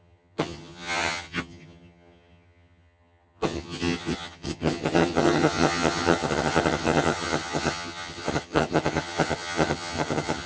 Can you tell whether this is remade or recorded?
remade